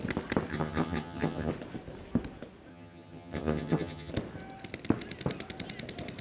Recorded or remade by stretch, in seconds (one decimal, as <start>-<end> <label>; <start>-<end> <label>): 0.0-0.5 recorded; 0.5-1.5 remade; 1.5-2.7 recorded; 2.7-4.1 remade; 4.1-6.2 recorded